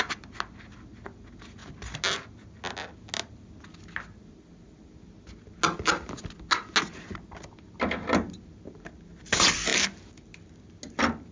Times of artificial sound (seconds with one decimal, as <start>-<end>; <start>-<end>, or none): none